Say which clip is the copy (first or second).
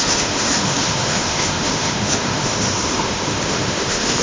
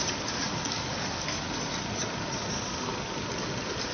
first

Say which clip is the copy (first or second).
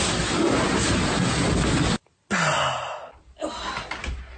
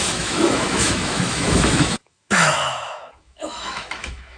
second